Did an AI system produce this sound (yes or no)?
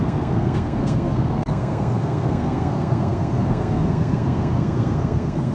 yes